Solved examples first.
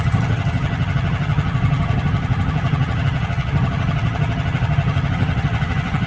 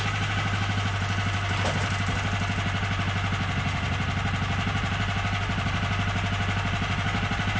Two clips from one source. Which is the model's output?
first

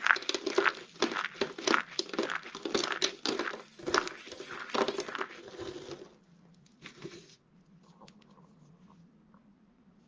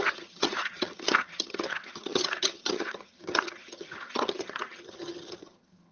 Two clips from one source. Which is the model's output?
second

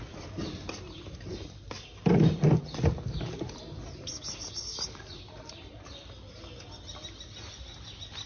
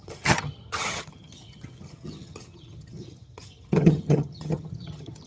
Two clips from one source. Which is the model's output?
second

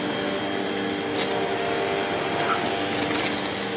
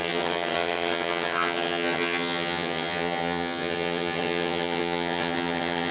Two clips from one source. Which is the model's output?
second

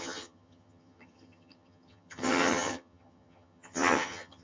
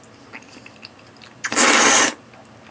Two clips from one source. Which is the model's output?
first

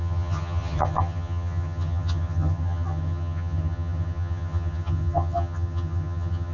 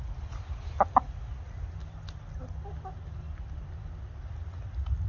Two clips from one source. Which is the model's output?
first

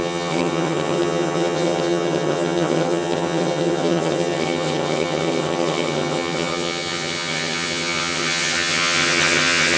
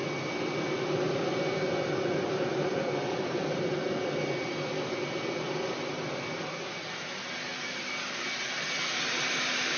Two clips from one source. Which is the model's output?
first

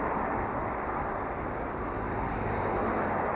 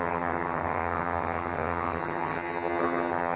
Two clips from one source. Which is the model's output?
second